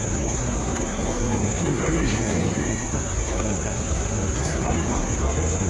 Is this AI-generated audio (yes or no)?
yes